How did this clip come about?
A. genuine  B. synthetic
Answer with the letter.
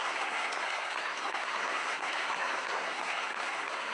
B